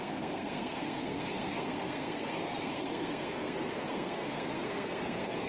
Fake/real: fake